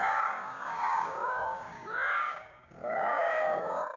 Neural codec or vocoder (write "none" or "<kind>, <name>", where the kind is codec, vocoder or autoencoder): codec, DAC